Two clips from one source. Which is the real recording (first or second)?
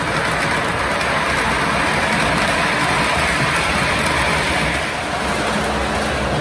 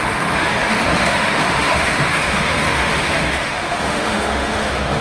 first